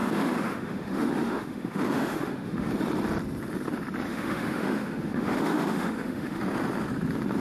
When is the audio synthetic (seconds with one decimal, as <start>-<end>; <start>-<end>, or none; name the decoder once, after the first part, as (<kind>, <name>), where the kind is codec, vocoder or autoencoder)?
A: 0.0-2.7 (autoencoder, DAC-VAE); 4.1-6.4